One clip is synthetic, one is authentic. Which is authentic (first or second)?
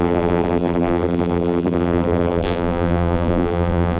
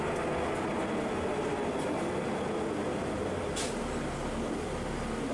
second